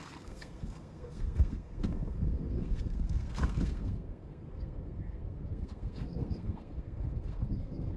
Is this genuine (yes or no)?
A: no